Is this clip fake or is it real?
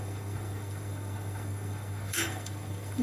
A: fake